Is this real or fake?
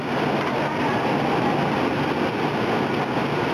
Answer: real